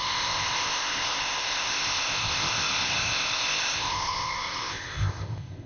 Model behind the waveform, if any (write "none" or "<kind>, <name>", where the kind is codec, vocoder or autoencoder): codec, ZipCodec